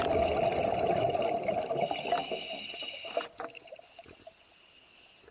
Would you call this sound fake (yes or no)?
no